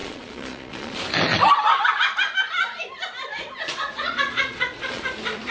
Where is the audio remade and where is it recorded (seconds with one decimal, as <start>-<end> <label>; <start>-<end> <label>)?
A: 0.0-1.0 remade; 1.0-3.7 recorded; 3.7-5.0 remade; 5.0-5.5 recorded